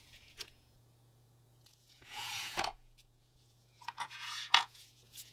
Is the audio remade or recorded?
remade